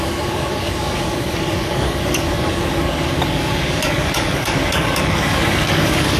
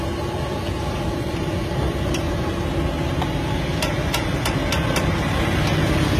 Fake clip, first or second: first